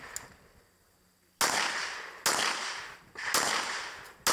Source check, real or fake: real